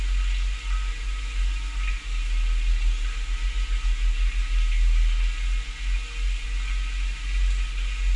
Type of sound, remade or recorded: recorded